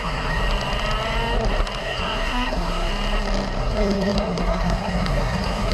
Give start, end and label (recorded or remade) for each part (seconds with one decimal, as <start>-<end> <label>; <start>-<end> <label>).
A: 0.0-0.4 remade; 0.4-1.8 recorded; 1.8-2.9 remade; 2.9-3.6 recorded; 3.6-5.7 remade